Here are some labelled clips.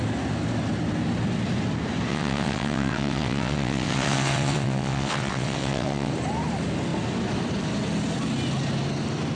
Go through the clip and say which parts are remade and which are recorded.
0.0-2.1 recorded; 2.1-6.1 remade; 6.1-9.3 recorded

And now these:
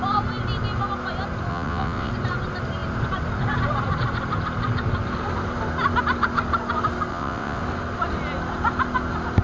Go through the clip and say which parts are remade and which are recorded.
0.0-1.5 recorded; 1.5-2.1 remade; 2.1-7.1 recorded; 7.1-7.6 remade; 7.6-9.4 recorded